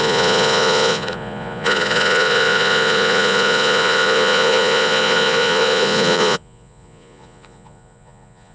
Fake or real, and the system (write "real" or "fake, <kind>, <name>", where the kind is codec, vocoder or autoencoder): fake, vocoder, Vocos